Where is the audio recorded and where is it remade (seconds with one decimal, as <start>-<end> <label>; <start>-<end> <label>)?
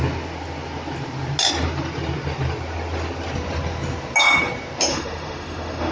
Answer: 0.0-4.9 recorded; 4.9-5.9 remade